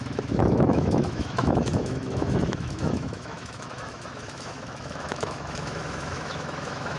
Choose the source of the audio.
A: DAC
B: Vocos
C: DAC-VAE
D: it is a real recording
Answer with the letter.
C